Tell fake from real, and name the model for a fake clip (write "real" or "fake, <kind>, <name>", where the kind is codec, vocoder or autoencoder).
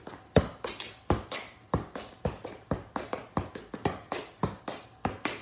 real